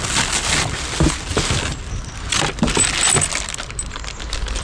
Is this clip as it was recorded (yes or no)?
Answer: yes